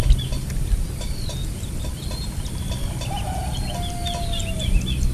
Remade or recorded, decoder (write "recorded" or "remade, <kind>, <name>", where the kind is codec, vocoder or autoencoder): recorded